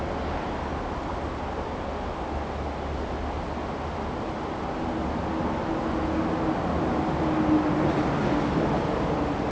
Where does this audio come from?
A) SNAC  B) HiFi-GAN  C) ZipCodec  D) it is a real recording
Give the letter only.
D